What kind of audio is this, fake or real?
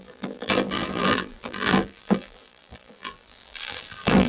fake